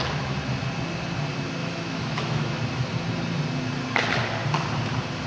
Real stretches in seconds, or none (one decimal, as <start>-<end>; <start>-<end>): 0.0-1.6; 2.8-5.3